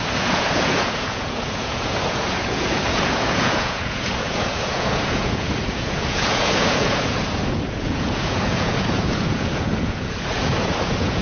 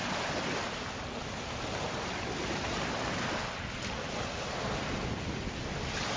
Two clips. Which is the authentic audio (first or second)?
second